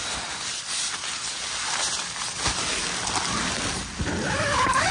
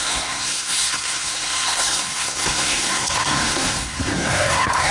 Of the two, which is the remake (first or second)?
second